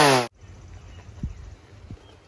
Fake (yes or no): no